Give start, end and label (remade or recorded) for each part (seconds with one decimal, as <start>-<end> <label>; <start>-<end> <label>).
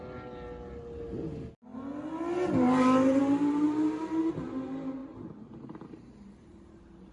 0.0-5.0 recorded; 5.0-7.1 remade